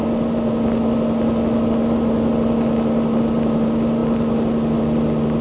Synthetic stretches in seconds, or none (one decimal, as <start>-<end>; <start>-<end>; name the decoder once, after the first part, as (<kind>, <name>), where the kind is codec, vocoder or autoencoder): none